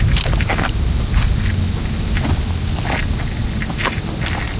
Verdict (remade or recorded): recorded